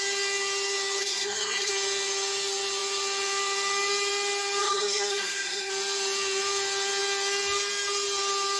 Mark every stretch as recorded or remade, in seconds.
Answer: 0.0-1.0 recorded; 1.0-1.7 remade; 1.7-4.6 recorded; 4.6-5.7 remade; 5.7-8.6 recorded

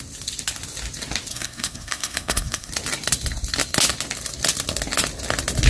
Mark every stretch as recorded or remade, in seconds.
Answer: 0.0-1.3 recorded; 1.3-2.7 remade; 2.7-5.7 recorded